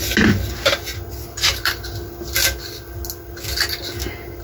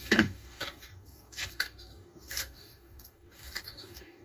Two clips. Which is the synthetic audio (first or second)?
second